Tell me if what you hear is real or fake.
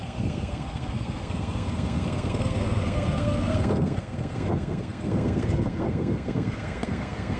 fake